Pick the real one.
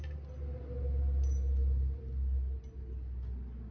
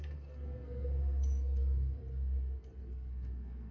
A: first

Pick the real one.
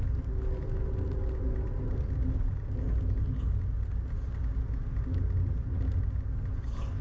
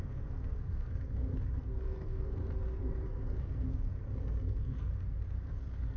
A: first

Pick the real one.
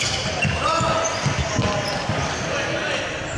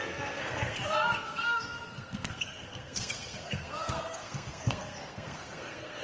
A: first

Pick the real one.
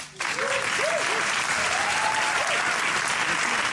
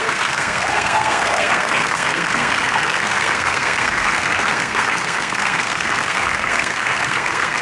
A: first